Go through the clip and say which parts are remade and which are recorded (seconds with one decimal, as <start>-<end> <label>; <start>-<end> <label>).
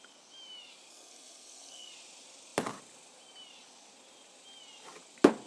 0.0-0.9 recorded; 0.9-1.9 remade; 1.9-5.5 recorded